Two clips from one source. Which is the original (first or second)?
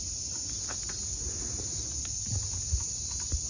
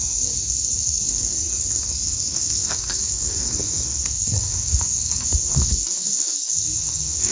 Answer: first